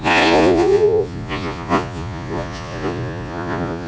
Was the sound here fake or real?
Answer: fake